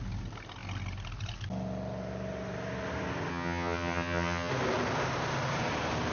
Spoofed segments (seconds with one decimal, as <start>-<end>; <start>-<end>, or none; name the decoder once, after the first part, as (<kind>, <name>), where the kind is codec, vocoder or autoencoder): 3.3-4.5 (vocoder, HiFi-GAN)